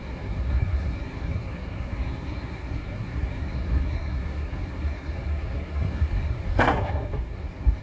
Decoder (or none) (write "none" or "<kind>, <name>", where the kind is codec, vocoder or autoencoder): codec, SNAC